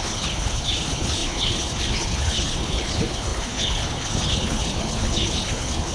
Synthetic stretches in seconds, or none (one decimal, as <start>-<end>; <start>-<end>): 0.0-5.9